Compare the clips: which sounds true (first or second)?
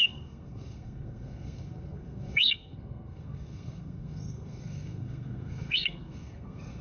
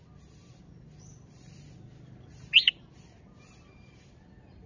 second